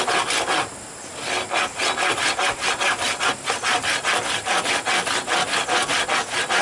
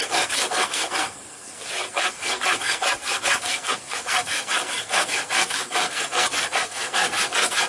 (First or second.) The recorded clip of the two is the first